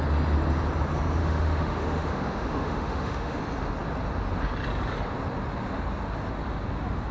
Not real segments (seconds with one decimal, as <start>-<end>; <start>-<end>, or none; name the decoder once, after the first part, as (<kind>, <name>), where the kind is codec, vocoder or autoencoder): 1.2-3.4 (autoencoder, DAC-VAE)